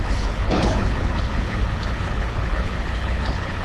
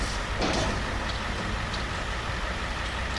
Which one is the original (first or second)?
second